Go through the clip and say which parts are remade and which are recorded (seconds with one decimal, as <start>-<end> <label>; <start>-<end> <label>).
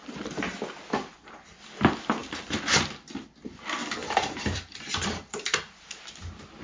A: 0.0-4.0 recorded; 4.0-5.8 remade; 5.8-6.6 recorded